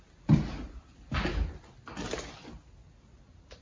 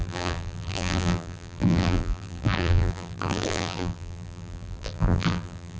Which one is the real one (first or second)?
first